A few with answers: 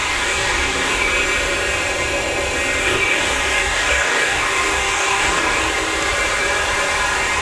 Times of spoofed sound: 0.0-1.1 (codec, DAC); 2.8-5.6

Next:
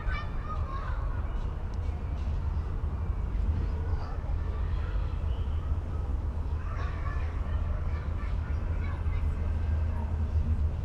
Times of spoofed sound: 0.7-1.2 (codec, DAC); 3.9-5.2; 6.1-8.5